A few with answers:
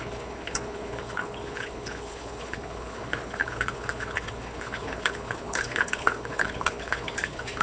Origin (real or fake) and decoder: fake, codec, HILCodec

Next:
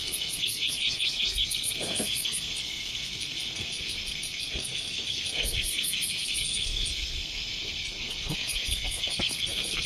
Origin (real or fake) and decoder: fake, codec, SNAC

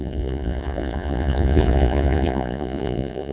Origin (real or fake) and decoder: fake, vocoder, Vocos